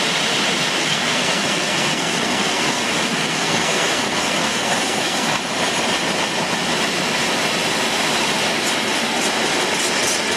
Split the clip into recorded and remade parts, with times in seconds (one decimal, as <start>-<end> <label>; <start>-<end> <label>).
0.0-0.8 recorded; 0.8-5.4 remade; 5.4-10.4 recorded